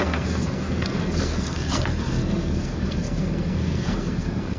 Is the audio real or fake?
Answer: fake